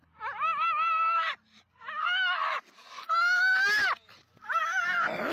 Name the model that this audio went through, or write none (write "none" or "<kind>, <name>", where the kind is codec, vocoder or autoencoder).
none